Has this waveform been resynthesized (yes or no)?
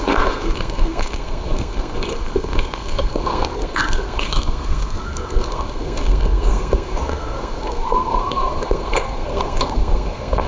yes